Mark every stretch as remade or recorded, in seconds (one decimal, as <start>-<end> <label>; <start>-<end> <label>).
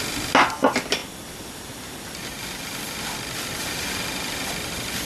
0.0-5.0 recorded